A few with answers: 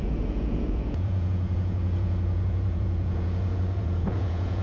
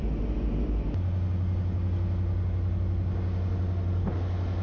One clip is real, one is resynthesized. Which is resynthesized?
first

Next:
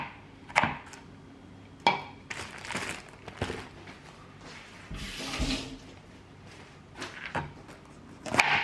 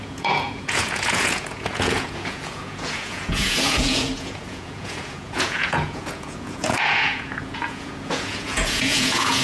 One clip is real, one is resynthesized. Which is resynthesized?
second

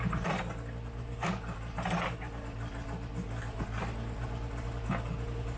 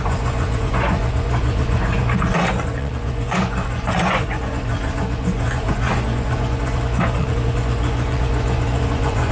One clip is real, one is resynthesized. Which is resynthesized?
second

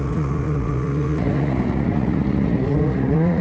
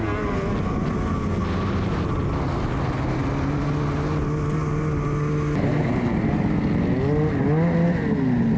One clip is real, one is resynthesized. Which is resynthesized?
first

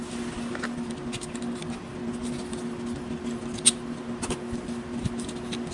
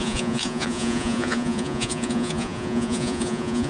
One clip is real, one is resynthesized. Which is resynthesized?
second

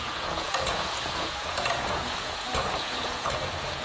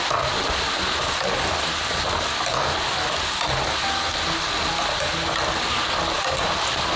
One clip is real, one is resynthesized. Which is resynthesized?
first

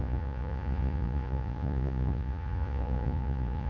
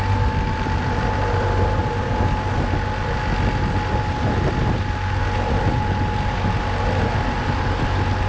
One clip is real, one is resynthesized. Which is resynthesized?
first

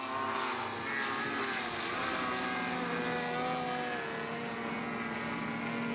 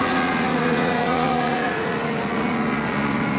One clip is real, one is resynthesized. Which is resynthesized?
second